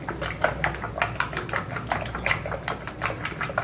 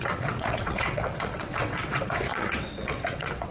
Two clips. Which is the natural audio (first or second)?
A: first